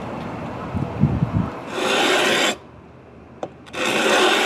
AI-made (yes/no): yes